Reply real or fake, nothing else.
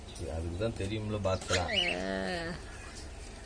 real